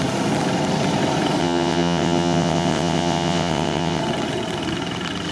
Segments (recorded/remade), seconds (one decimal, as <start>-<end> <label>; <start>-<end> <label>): 0.0-1.4 recorded; 1.4-4.0 remade; 4.0-5.3 recorded